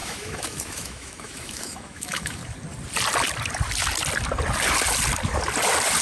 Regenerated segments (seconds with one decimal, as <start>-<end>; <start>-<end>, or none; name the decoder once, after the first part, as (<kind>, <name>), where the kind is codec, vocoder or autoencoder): 0.0-2.4 (autoencoder, DAC-VAE)